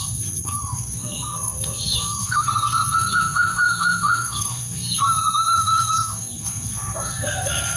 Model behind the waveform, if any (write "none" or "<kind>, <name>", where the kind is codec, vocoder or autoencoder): codec, SNAC